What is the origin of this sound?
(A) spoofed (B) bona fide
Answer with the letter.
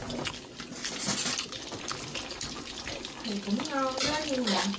B